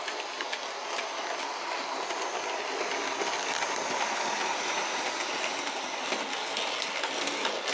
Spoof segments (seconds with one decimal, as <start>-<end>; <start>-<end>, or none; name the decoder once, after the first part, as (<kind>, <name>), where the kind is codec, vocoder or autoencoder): 4.4-5.1 (vocoder, Vocos)